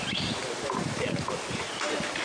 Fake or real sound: real